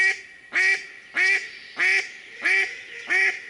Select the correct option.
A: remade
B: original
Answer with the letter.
B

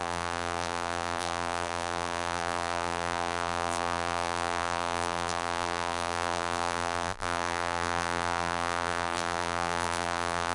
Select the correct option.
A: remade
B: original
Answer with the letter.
A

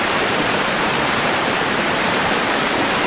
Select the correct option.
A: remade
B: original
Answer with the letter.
A